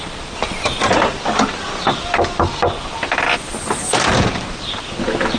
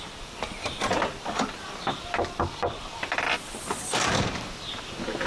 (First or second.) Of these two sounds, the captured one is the first